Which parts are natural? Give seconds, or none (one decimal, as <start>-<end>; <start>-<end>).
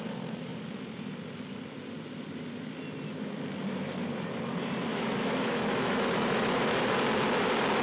0.0-4.9; 6.9-7.8